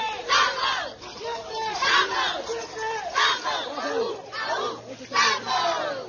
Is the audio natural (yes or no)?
yes